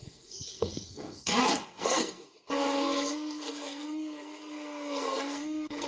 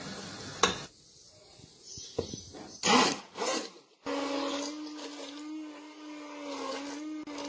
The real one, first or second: second